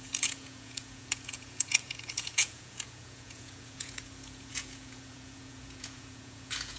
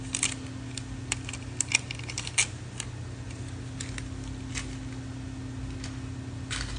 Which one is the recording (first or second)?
second